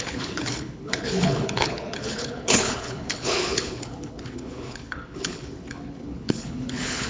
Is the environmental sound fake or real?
fake